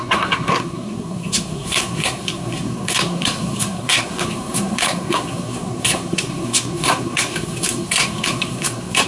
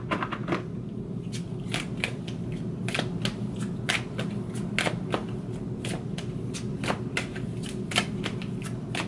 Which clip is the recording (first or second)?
second